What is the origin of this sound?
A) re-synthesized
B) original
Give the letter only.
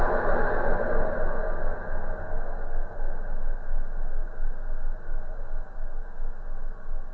B